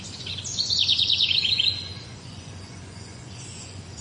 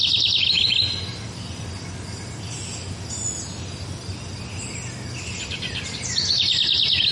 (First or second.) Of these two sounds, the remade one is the first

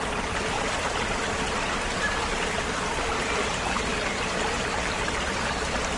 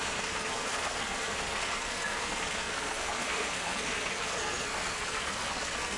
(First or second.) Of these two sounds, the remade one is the second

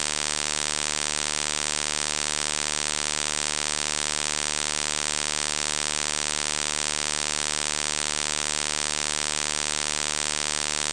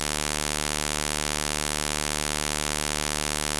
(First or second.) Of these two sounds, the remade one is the first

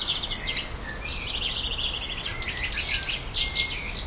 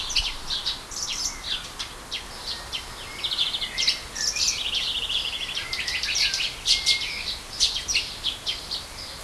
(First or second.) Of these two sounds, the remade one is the second